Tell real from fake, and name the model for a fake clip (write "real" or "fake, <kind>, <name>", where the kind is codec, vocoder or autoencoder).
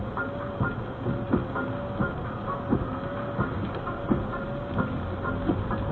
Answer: real